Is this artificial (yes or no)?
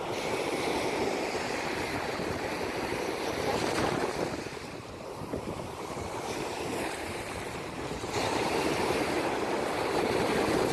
yes